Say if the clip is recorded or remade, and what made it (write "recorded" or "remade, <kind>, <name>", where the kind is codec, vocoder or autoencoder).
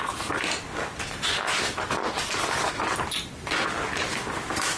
recorded